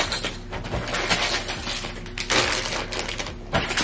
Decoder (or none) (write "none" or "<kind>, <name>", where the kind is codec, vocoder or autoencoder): none